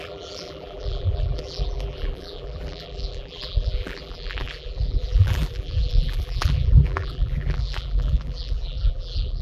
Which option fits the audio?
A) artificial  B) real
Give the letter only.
A